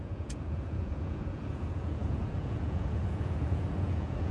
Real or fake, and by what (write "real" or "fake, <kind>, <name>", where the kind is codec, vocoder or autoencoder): fake, vocoder, Vocos